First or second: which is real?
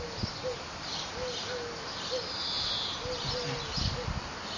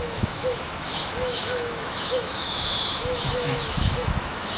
first